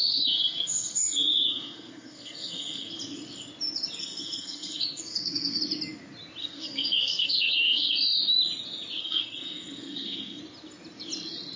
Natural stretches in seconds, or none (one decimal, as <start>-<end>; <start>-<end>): 3.0-4.0; 5.6-6.4; 7.9-9.0; 10.4-11.6